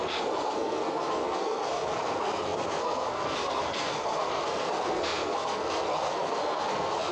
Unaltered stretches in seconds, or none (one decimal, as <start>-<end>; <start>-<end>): none